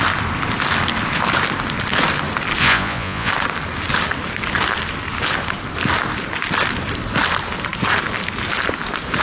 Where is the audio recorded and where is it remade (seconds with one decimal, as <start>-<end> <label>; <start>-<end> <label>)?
0.0-2.6 recorded; 2.6-3.3 remade; 3.3-9.2 recorded